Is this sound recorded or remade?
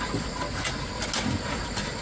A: recorded